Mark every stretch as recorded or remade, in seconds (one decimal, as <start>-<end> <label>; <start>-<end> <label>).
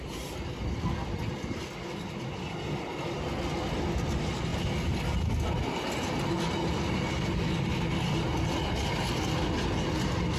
0.0-10.4 recorded